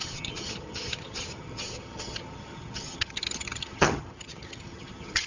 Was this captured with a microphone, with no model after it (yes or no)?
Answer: no